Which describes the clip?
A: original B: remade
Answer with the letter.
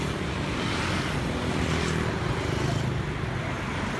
A